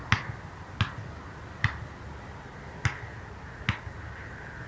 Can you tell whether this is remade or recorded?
recorded